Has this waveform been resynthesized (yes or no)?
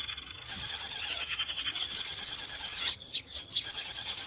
yes